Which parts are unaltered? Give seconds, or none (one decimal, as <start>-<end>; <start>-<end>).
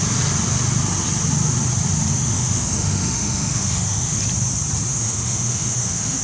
0.0-2.1; 4.2-4.9